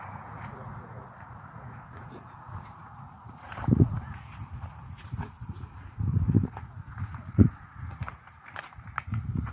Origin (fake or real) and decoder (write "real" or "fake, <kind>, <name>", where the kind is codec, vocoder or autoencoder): fake, vocoder, Vocos